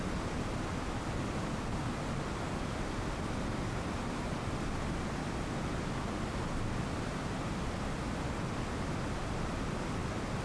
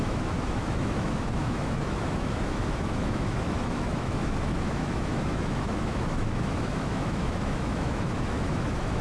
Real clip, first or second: first